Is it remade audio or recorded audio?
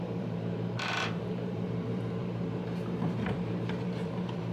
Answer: remade